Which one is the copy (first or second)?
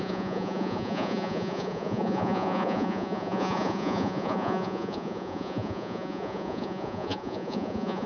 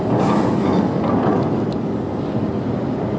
first